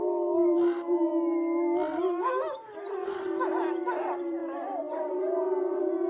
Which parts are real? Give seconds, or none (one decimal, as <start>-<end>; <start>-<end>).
1.1-2.4